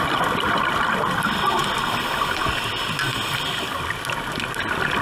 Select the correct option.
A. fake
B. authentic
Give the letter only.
B